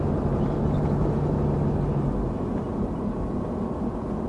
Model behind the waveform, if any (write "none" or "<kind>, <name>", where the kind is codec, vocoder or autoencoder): none